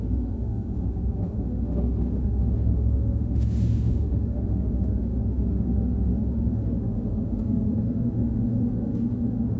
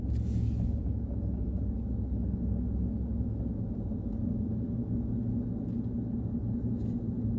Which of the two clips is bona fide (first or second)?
second